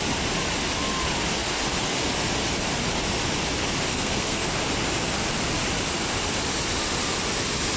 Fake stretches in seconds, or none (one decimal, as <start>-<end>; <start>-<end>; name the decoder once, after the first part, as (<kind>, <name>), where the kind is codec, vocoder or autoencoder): 3.9-4.5 (codec, SNAC)